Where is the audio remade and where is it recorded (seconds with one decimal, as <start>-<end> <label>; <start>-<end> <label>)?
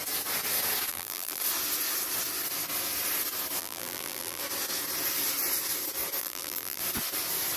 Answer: 0.0-0.9 recorded; 0.9-1.4 remade; 1.4-3.6 recorded; 3.6-4.4 remade; 4.4-6.2 recorded; 6.2-6.8 remade; 6.8-7.6 recorded